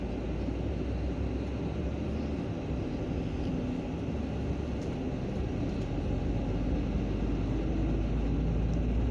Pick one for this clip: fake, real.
real